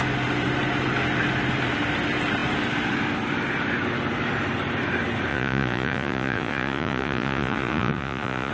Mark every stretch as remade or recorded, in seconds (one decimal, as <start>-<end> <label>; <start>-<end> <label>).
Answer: 0.0-5.3 recorded; 5.3-8.5 remade